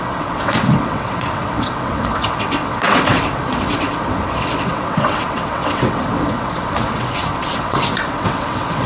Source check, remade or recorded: remade